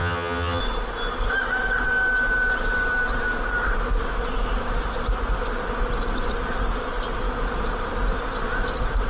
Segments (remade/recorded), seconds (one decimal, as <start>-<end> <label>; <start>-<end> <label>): 0.0-0.6 remade; 0.6-9.1 recorded